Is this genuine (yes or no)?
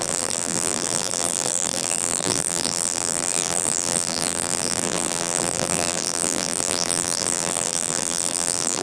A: no